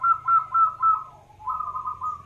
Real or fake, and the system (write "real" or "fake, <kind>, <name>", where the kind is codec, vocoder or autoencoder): real